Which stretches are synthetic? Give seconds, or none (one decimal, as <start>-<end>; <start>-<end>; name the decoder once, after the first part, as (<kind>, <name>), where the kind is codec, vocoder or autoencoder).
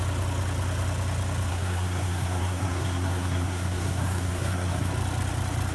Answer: 1.5-4.9 (codec, SNAC)